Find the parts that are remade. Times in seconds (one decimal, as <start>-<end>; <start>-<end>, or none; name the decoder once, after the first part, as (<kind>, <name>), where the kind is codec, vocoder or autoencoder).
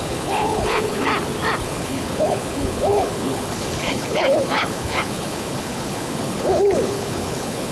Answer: 0.0-1.1 (codec, HILCodec); 1.6-7.7